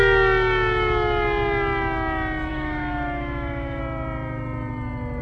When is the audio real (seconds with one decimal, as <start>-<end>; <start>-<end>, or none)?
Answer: 0.0-2.5; 3.8-5.2